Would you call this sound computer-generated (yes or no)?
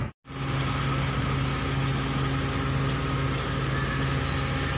no